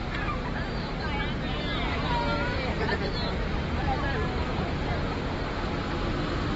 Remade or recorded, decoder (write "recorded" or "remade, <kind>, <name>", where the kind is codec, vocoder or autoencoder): recorded